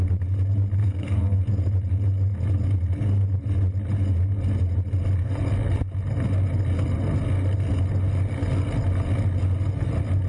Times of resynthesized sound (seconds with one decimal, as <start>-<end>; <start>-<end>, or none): 0.8-1.4